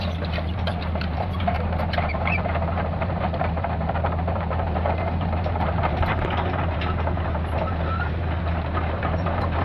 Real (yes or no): no